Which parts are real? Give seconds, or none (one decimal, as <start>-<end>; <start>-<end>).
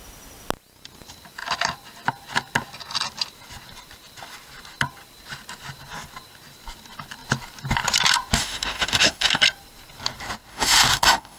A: 0.0-8.4; 9.4-10.5